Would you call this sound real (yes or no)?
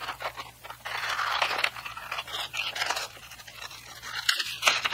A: no